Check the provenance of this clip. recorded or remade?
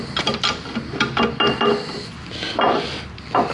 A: recorded